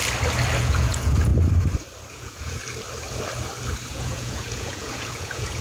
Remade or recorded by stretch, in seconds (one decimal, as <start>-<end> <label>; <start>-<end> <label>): 0.0-0.6 recorded; 0.6-1.3 remade; 1.3-2.1 recorded; 2.1-2.6 remade; 2.6-3.9 recorded; 3.9-5.6 remade